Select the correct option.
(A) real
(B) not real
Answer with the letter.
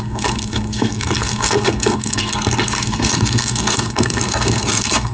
B